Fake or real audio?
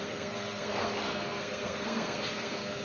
fake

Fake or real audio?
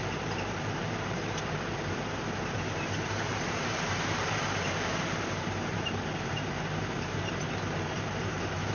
fake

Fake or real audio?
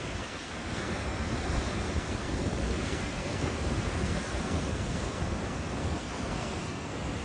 fake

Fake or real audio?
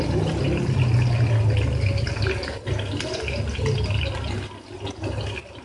real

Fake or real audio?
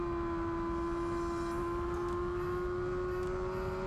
real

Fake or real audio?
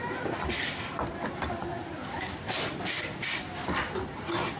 real